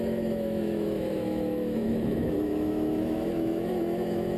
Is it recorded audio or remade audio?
remade